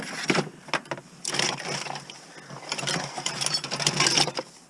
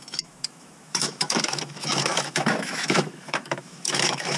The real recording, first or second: first